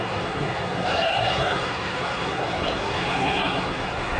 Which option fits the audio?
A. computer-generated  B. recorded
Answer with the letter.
A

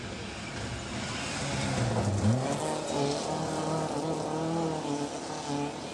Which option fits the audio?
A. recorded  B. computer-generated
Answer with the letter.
A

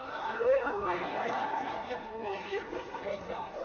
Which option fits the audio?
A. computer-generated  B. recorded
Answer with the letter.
A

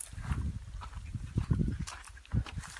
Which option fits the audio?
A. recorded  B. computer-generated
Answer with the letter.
B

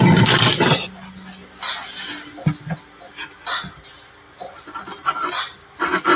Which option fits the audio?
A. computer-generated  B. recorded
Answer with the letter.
B